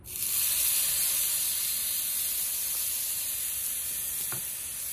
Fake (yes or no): no